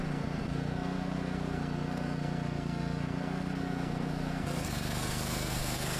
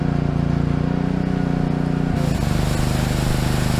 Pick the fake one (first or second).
first